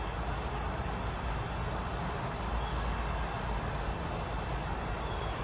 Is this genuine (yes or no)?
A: yes